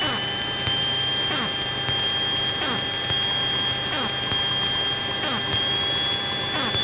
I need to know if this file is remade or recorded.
recorded